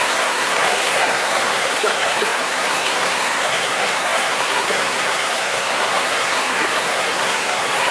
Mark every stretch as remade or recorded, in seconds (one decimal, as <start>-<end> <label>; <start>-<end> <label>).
0.0-7.9 remade